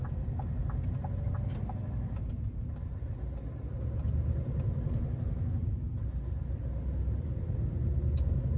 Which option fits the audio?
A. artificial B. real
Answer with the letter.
B